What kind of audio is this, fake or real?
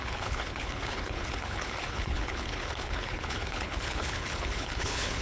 fake